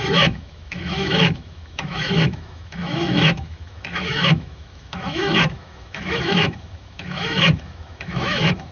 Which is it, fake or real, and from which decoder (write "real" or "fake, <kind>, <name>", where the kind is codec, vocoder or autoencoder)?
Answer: fake, autoencoder, DAC-VAE